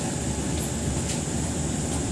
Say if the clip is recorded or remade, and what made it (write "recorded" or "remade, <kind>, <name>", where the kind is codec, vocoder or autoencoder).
recorded